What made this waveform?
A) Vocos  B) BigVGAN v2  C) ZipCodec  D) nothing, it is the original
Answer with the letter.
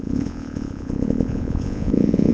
A